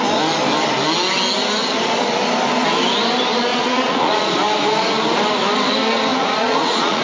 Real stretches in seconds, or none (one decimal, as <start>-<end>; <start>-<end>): 0.0-3.5; 4.3-6.1